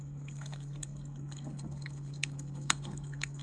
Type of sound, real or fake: fake